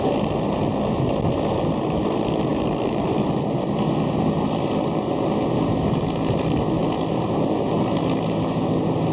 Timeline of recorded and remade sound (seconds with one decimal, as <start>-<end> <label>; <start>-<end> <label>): 0.0-9.1 recorded